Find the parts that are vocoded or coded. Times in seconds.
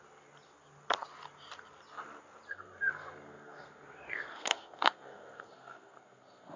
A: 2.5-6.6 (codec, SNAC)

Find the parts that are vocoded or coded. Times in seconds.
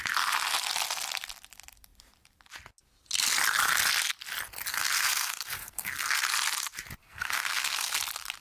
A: 4.7-6.2 (codec, SNAC); 7.0-8.0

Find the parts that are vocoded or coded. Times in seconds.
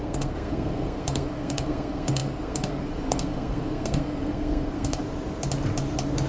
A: 0.0-5.0 (codec, SNAC)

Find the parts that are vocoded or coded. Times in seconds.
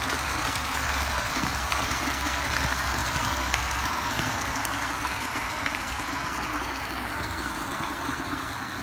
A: 0.0-8.8 (codec, SNAC)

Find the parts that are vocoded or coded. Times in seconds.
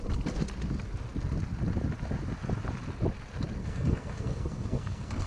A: 3.6-5.3 (codec, SNAC)